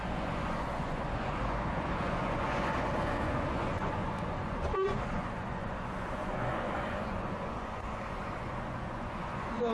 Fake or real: fake